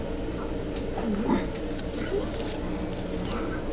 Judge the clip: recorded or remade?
recorded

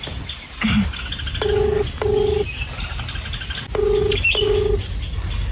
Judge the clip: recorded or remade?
recorded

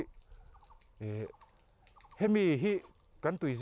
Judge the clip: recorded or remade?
recorded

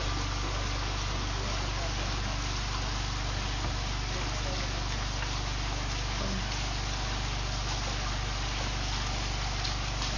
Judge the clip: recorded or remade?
recorded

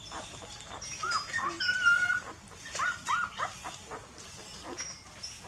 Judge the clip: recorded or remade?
recorded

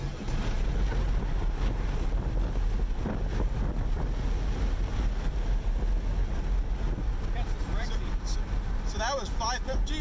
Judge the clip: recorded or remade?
recorded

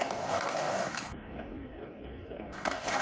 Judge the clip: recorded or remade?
remade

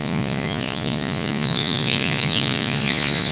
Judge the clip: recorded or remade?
remade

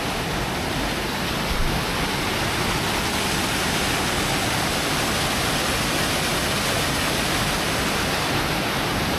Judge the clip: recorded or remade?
recorded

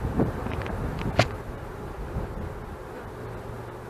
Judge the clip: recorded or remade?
recorded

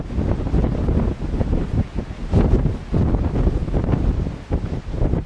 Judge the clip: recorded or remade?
recorded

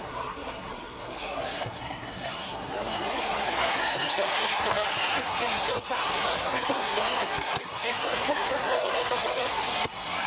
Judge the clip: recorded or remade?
remade